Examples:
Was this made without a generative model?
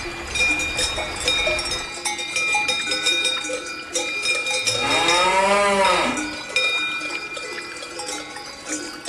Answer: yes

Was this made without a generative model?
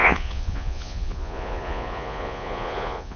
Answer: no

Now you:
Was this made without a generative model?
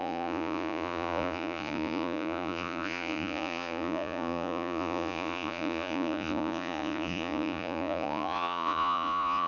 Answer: no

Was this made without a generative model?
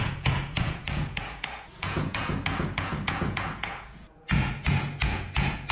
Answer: no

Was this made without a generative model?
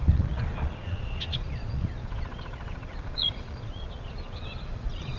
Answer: no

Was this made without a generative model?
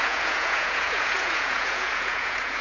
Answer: no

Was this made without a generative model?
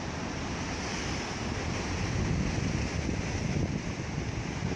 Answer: yes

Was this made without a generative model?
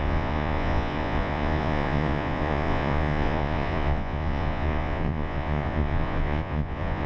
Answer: no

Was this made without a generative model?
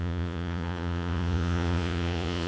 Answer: no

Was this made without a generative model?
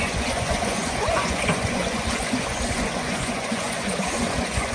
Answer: no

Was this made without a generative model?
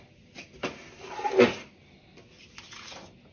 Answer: yes